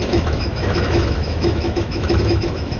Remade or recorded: remade